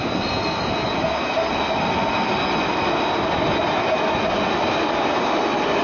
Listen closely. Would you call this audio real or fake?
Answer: real